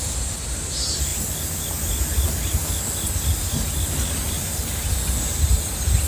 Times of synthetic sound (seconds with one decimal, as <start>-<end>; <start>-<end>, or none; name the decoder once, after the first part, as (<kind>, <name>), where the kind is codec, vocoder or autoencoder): none